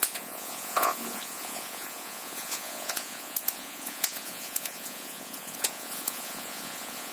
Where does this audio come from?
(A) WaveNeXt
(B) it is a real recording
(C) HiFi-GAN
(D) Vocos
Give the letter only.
D